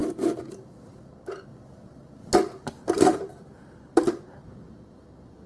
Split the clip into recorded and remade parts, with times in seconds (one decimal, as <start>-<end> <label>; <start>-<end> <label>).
0.0-5.5 recorded